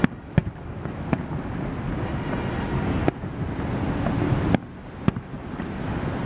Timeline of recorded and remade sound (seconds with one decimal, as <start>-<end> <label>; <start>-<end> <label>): 0.0-6.3 recorded